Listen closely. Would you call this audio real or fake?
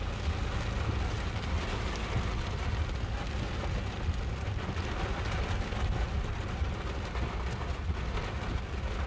real